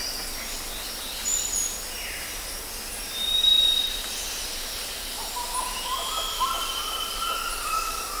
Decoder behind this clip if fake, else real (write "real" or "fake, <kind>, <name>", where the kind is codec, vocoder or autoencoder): fake, vocoder, BigVGAN v2